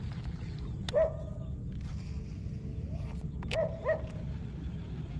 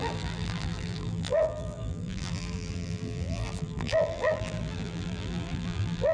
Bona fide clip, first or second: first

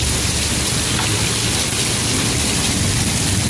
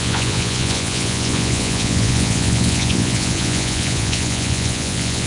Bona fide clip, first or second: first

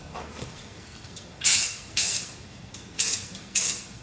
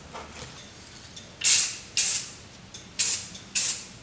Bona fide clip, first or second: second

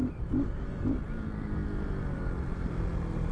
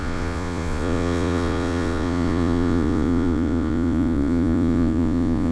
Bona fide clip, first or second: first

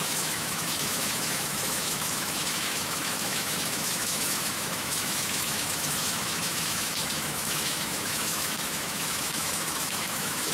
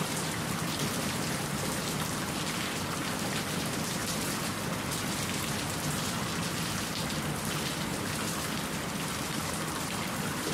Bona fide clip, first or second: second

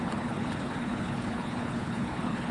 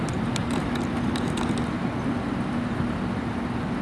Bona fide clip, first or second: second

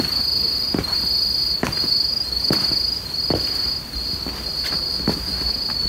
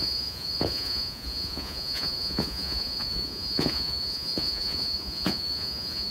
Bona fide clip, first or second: first